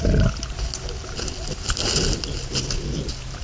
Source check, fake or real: real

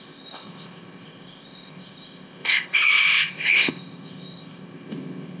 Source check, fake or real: fake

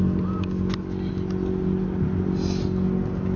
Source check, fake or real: real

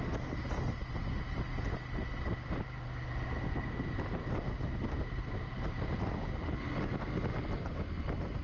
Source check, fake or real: real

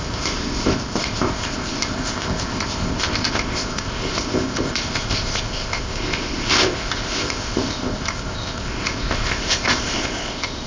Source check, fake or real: fake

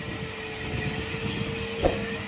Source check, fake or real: real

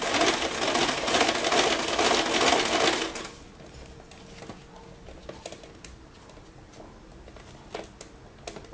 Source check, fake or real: real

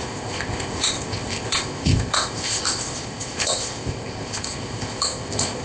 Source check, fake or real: fake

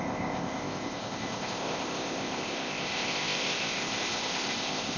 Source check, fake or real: fake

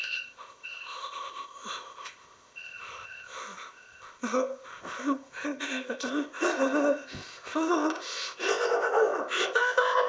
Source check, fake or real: fake